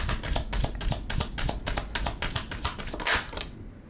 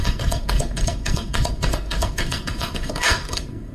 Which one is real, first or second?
first